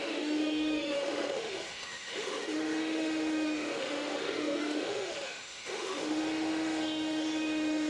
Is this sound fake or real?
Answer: fake